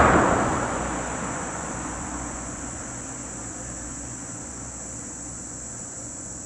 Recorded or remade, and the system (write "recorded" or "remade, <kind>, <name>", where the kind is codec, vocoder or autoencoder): remade, vocoder, Vocos